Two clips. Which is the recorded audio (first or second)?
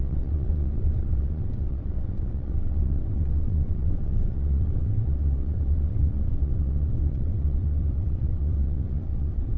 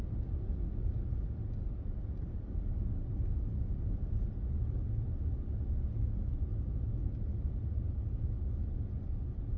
second